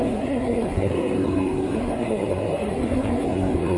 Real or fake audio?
fake